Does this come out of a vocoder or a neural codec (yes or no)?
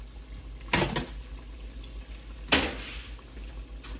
no